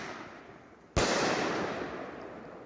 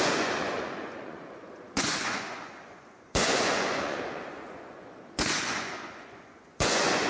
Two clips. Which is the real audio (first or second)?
first